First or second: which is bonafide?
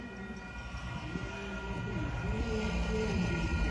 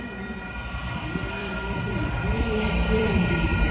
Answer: first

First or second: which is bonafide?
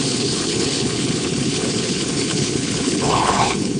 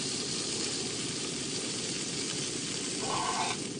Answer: second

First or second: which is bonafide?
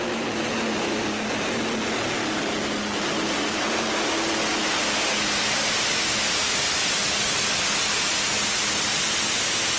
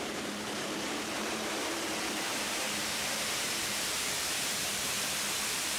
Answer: first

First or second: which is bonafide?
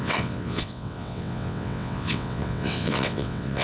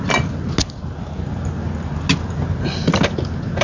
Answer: second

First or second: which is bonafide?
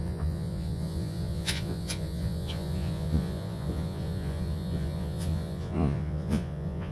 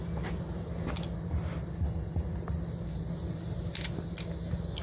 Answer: second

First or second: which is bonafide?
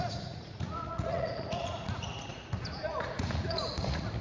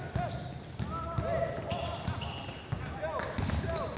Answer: second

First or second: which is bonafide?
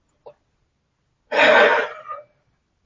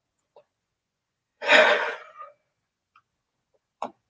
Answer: first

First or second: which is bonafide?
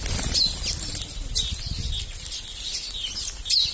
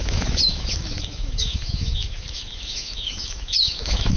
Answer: first